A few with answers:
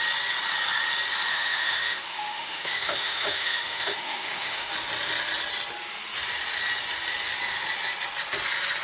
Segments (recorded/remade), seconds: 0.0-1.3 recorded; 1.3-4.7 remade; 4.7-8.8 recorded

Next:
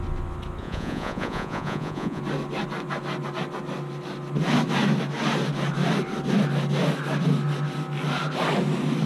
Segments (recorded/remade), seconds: 0.0-0.6 recorded; 0.6-2.2 remade; 2.2-9.1 recorded

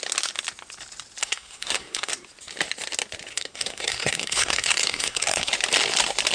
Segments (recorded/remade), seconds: 0.0-1.2 recorded; 1.2-2.1 remade; 2.1-3.3 recorded; 3.3-5.5 remade; 5.5-6.3 recorded